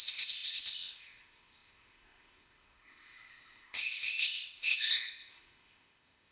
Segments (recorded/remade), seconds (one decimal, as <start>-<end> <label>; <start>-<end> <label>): 0.0-6.3 remade